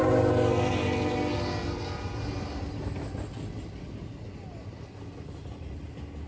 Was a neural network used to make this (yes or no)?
no